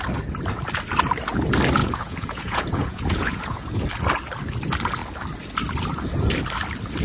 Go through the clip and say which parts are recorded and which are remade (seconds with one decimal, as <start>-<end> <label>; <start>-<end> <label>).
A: 0.0-1.8 recorded; 1.8-3.9 remade; 3.9-7.0 recorded